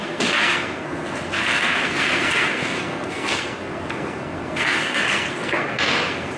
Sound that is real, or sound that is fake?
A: fake